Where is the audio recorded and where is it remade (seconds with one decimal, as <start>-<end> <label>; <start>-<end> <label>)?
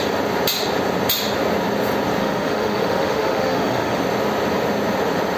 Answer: 0.0-2.2 recorded; 2.2-4.0 remade; 4.0-5.4 recorded